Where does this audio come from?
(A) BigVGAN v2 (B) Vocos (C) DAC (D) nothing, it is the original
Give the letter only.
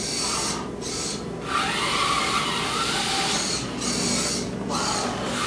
A